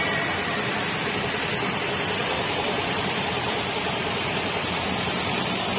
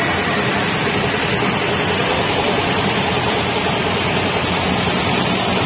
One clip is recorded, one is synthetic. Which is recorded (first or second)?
second